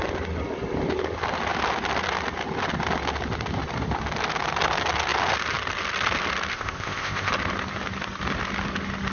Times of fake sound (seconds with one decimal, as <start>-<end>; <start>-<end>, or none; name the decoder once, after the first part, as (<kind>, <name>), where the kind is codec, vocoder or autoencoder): 6.5-7.3 (codec, ZipCodec)